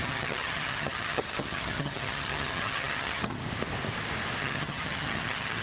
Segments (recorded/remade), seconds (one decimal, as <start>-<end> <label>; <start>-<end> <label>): 0.0-3.4 remade; 3.4-4.4 recorded; 4.4-5.6 remade